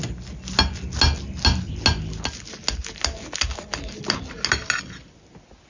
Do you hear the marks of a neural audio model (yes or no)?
no